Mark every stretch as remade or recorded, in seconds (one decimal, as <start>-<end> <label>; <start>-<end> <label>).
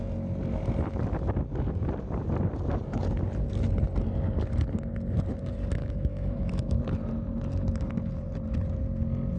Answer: 0.0-5.8 recorded; 5.8-6.8 remade; 6.8-9.4 recorded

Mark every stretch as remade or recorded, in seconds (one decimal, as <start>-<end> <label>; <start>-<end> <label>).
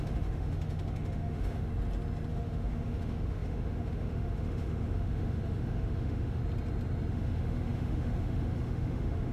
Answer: 0.0-1.7 remade; 1.7-2.3 recorded; 2.3-6.4 remade; 6.4-7.1 recorded; 7.1-9.3 remade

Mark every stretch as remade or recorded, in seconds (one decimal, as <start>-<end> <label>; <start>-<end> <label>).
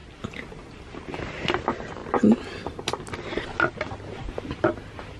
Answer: 0.0-5.2 recorded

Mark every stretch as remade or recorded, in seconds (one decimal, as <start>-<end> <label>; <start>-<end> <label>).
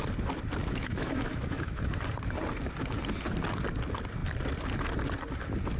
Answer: 0.0-0.6 recorded; 0.6-2.0 remade; 2.0-5.8 recorded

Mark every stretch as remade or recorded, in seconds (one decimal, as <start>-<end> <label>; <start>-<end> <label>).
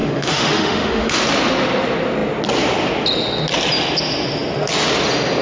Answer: 0.0-1.2 remade; 1.2-5.4 recorded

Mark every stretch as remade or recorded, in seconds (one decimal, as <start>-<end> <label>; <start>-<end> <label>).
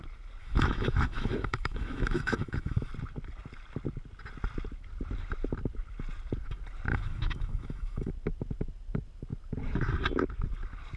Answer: 0.0-0.4 recorded; 0.4-2.9 remade; 2.9-6.9 recorded; 6.9-8.1 remade; 8.1-11.0 recorded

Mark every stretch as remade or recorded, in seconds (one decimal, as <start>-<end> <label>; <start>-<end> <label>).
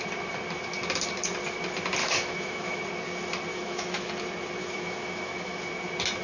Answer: 0.0-2.0 recorded; 2.0-2.8 remade; 2.8-3.5 recorded; 3.5-4.1 remade; 4.1-4.6 recorded; 4.6-5.7 remade; 5.7-6.2 recorded